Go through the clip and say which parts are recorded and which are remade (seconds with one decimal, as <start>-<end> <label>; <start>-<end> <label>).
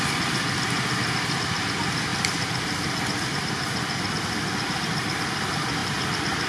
0.0-5.8 recorded; 5.8-6.5 remade